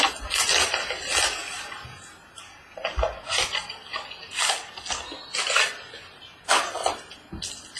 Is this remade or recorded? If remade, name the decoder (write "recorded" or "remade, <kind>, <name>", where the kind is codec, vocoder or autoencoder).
recorded